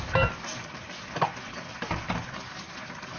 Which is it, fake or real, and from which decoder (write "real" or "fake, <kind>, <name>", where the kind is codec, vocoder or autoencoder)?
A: real